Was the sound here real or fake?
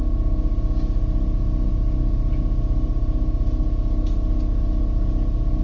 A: real